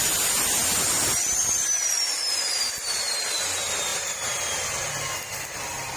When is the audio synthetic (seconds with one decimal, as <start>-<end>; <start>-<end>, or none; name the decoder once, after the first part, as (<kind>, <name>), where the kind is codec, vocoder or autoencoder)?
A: 3.9-4.9 (vocoder, BigVGAN v2)